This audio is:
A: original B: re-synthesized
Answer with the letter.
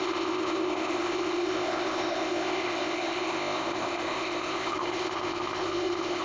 B